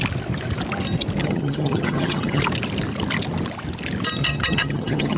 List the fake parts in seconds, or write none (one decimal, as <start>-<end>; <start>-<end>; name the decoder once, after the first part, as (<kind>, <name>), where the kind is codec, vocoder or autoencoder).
1.2-2.4 (vocoder, HiFi-GAN); 4.2-5.2